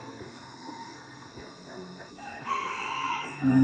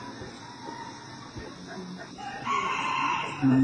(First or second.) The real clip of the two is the second